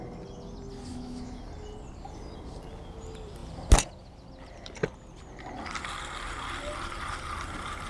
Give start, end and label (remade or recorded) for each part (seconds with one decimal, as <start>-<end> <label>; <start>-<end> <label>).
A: 0.0-0.9 recorded; 0.9-1.4 remade; 1.4-7.9 recorded